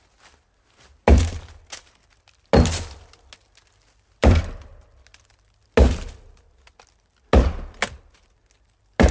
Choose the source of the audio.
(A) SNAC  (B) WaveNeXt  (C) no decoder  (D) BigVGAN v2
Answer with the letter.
C